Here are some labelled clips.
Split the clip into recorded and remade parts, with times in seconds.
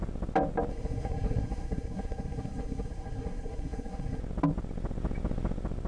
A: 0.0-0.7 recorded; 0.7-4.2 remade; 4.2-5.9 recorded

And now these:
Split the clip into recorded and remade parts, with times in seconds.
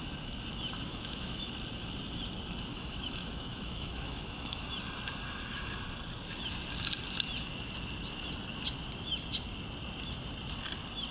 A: 0.0-0.9 recorded; 0.9-1.5 remade; 1.5-2.7 recorded; 2.7-4.7 remade; 4.7-11.1 recorded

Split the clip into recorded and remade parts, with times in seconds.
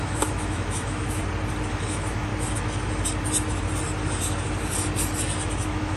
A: 0.0-1.2 remade; 1.2-1.7 recorded; 1.7-2.3 remade; 2.3-5.6 recorded; 5.6-6.0 remade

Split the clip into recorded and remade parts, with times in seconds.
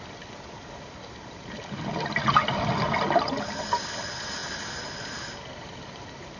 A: 0.0-6.4 recorded